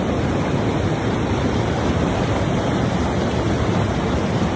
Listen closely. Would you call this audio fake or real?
real